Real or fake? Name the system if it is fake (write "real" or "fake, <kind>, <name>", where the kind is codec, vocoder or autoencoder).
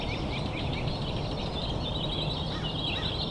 real